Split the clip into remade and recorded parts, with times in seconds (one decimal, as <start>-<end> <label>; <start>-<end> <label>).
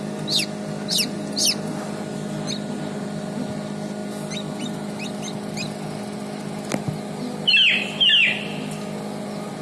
0.0-9.6 recorded